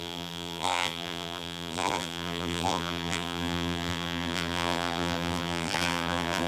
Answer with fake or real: fake